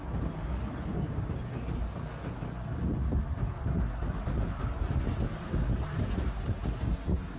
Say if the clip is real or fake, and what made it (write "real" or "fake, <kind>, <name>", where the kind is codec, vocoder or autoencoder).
real